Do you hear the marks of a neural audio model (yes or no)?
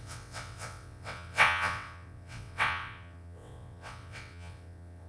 yes